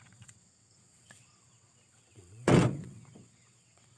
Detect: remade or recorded remade